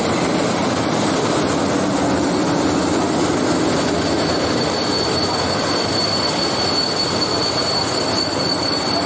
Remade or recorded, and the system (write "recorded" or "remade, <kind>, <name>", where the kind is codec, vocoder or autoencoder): recorded